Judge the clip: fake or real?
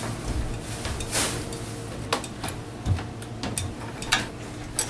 real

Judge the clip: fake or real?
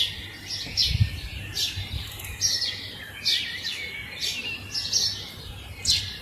real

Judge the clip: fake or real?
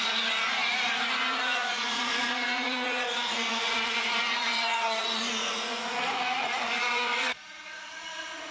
fake